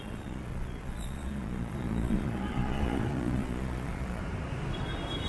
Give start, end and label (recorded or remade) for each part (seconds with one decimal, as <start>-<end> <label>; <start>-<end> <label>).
0.0-4.2 remade; 4.2-5.3 recorded